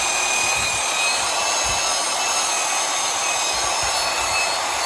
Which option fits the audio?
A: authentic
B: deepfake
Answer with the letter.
A